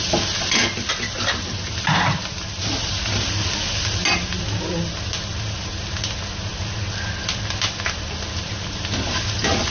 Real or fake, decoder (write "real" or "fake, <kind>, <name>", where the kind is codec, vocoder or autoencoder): real